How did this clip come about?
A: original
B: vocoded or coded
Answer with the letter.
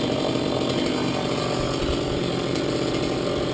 A